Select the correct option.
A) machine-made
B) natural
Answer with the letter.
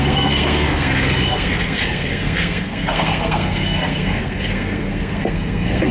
A